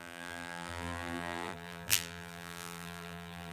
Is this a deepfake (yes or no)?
yes